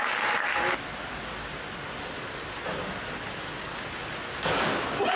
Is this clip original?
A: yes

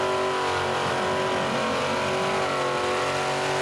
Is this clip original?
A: yes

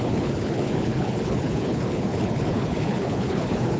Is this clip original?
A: no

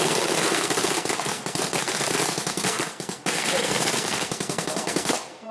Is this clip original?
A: no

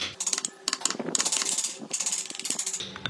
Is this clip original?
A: yes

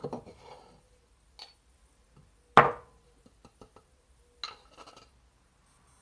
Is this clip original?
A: yes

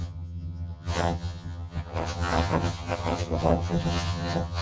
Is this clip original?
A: no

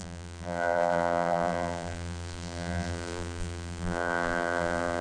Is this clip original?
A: no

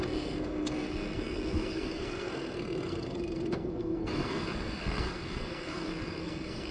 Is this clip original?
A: no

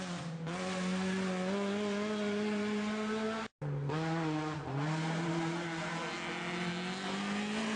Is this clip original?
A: yes